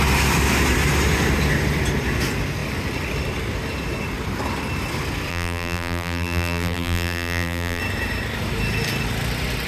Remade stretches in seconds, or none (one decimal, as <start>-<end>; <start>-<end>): 5.3-7.8